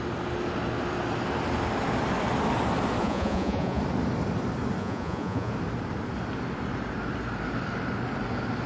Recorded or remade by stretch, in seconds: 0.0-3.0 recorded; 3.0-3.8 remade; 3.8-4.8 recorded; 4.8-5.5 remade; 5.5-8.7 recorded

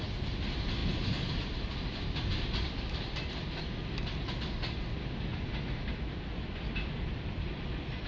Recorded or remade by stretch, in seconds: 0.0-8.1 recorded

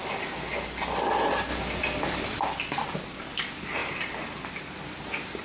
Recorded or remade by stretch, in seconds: 0.0-5.4 recorded

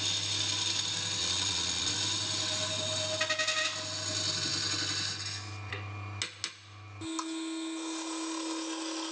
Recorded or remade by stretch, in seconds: 0.0-1.2 recorded; 1.2-1.9 remade; 1.9-9.1 recorded

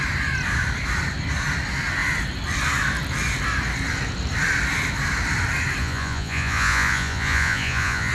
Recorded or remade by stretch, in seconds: 0.0-5.8 recorded; 5.8-8.1 remade

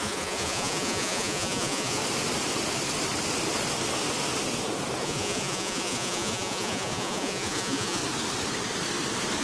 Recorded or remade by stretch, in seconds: 0.0-2.0 remade; 2.0-5.0 recorded; 5.0-8.0 remade; 8.0-9.4 recorded

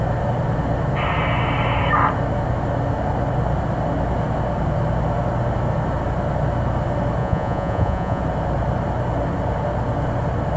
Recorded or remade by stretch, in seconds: 0.0-7.2 recorded; 7.2-8.2 remade; 8.2-10.6 recorded

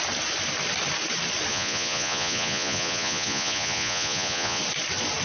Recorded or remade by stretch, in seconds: 0.0-1.5 recorded; 1.5-4.6 remade; 4.6-5.2 recorded